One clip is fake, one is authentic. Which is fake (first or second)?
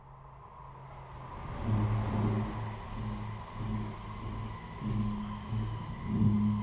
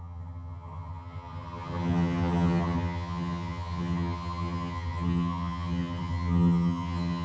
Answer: second